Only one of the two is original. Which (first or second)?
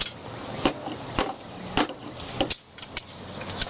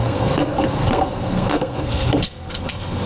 first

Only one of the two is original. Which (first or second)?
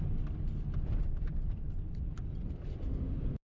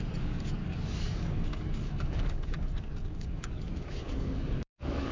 first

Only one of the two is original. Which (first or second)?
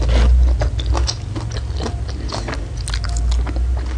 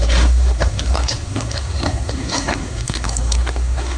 first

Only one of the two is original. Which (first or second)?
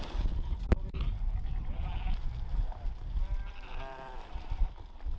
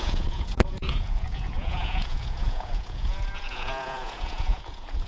first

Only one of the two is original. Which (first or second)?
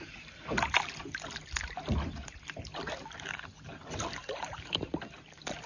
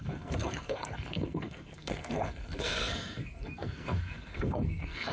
first